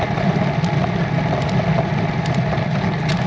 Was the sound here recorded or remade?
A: remade